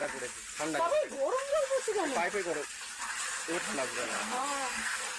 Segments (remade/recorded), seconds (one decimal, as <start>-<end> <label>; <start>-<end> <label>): 0.0-4.0 recorded; 4.0-5.2 remade